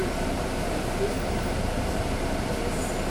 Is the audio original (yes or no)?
yes